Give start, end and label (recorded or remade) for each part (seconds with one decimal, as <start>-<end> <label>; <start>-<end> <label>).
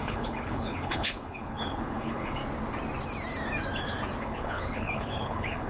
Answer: 0.0-2.4 remade; 2.4-4.2 recorded; 4.2-5.7 remade